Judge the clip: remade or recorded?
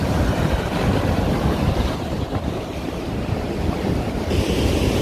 remade